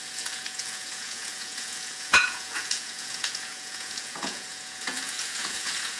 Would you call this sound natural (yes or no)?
no